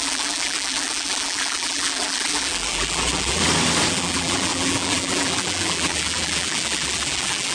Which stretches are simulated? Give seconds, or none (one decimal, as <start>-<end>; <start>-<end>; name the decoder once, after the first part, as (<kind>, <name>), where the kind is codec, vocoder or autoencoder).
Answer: 0.0-3.4 (vocoder, BigVGAN v2); 3.9-7.5